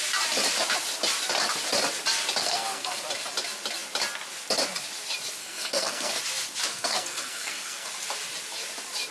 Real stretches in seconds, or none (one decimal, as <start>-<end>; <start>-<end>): 0.0-2.4; 3.0-5.4; 6.1-6.7; 7.9-9.1